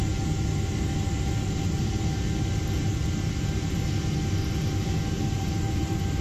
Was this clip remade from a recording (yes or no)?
no